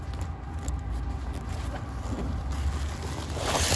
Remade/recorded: recorded